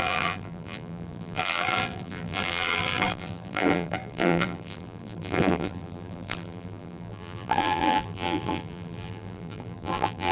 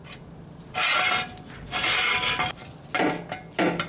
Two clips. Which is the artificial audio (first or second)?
first